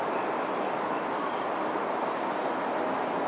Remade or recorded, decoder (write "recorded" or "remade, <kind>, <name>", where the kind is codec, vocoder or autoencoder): recorded